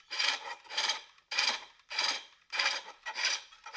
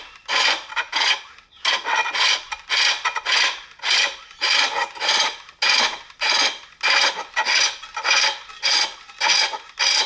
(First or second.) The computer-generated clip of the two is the first